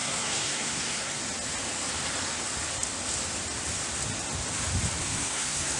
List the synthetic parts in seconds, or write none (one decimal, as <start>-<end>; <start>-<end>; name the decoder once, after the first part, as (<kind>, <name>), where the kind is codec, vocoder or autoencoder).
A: 0.0-1.2 (codec, SNAC); 5.0-5.8